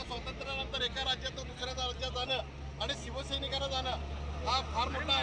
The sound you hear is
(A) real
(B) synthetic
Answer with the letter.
A